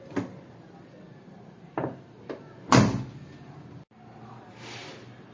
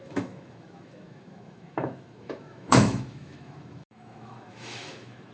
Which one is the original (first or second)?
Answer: first